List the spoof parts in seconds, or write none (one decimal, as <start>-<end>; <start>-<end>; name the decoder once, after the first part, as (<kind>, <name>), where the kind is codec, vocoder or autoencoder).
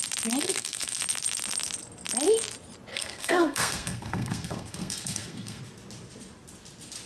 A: 0.4-1.0 (codec, SNAC); 2.9-5.6